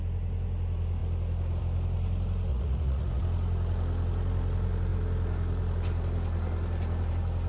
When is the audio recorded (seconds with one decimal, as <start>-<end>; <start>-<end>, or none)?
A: 0.0-2.5; 3.2-7.5